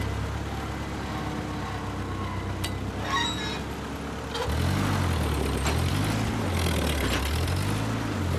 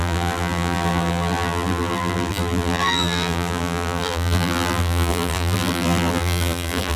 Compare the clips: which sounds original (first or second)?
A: first